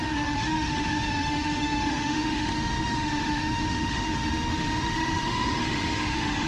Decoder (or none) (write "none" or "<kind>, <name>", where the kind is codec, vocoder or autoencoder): autoencoder, DAC-VAE